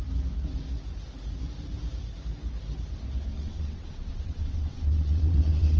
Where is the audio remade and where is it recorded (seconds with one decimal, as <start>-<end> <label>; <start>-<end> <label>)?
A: 0.0-3.3 recorded; 3.3-5.8 remade